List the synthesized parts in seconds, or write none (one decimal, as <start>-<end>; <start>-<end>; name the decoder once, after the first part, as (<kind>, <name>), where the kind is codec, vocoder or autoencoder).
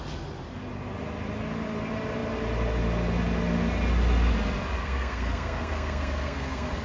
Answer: 4.8-6.8 (codec, SNAC)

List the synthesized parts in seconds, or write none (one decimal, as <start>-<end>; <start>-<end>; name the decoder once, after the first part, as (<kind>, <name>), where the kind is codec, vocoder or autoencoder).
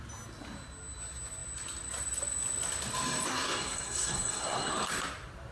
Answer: 3.3-4.7 (codec, SNAC)